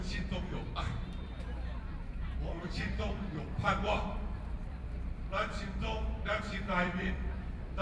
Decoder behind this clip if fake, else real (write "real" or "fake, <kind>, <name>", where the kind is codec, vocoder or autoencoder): fake, vocoder, BigVGAN v2